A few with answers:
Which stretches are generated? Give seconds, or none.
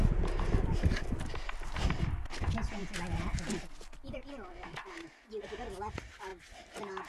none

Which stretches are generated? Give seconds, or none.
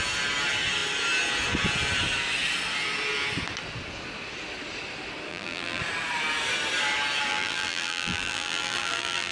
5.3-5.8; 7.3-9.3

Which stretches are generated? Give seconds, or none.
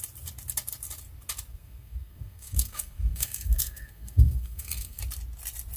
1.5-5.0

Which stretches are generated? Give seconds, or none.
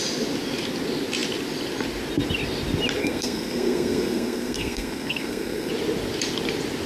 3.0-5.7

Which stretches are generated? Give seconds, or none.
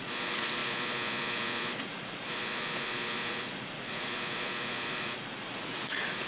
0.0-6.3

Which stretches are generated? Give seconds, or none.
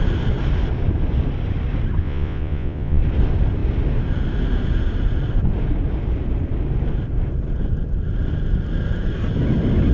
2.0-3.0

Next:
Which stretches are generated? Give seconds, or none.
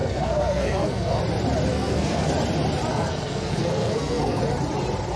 0.0-1.2; 1.7-2.3; 2.9-4.4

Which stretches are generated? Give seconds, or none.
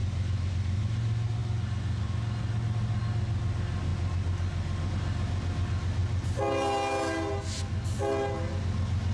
none